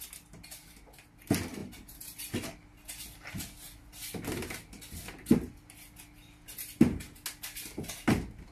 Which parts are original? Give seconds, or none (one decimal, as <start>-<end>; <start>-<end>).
0.0-8.5